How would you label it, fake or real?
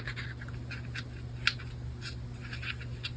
real